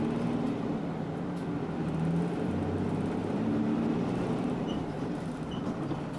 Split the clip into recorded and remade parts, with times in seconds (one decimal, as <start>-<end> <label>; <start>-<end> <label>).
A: 0.0-3.2 recorded; 3.2-6.2 remade